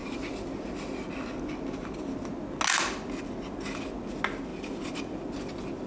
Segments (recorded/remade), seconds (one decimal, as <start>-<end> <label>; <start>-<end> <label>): 0.0-5.9 recorded